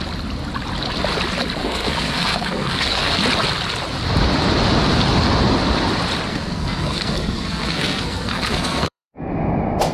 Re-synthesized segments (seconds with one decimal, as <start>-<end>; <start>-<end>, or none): 1.6-3.2; 6.3-9.3

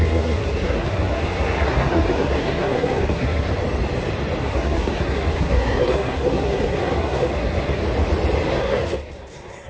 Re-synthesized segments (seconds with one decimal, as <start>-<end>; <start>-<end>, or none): 0.0-3.5; 4.4-7.8; 8.5-9.7

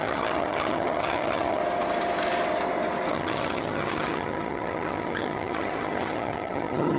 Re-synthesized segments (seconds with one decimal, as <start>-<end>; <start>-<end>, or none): 0.0-1.6; 3.1-7.0

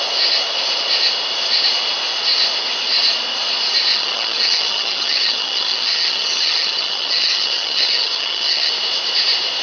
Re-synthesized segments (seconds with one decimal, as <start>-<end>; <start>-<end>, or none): 3.9-8.7

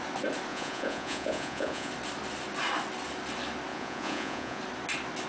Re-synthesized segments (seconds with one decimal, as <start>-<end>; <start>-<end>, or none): 0.5-1.9; 3.7-4.6

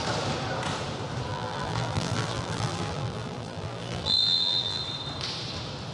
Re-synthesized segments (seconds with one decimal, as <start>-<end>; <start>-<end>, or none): 1.3-4.8

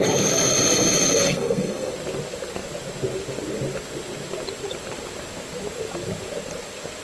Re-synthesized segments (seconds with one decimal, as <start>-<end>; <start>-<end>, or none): 1.2-1.9